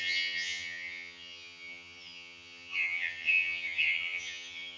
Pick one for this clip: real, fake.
fake